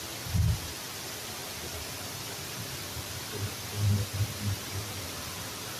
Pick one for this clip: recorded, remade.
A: recorded